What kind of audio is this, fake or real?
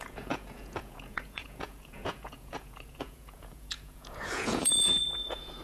fake